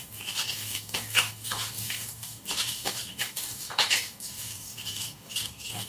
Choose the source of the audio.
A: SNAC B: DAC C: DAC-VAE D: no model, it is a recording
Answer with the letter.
B